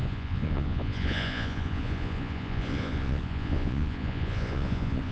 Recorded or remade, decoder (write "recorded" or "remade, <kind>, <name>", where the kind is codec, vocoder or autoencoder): remade, vocoder, Vocos